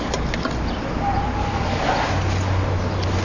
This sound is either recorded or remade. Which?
recorded